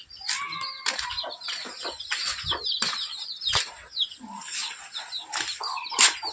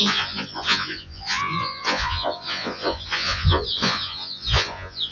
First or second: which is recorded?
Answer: first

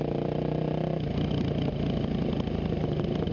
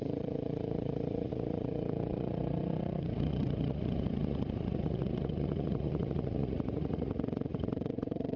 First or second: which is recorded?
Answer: first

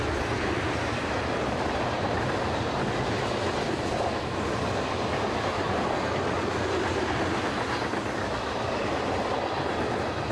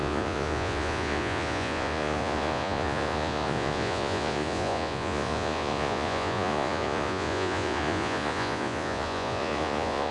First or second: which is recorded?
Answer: first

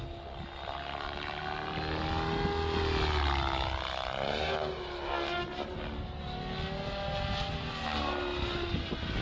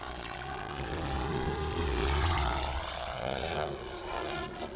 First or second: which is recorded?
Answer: first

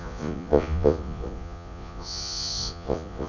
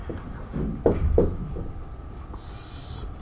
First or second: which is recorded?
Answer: second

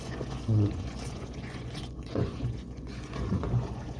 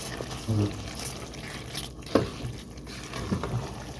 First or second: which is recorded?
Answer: second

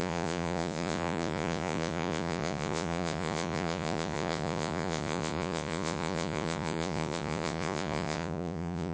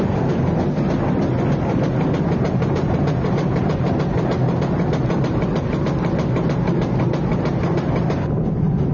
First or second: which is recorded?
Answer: second